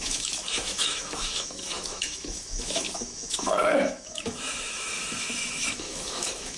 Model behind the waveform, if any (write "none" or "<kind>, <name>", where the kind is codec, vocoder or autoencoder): autoencoder, DAC-VAE